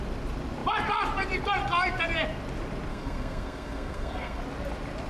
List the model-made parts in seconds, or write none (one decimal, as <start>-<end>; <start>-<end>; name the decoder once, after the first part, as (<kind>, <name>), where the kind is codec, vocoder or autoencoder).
2.9-4.4 (codec, SNAC)